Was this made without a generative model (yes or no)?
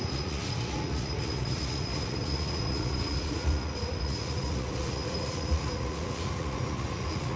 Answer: no